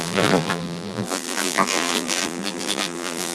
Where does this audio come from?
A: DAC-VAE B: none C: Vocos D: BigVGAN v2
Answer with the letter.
D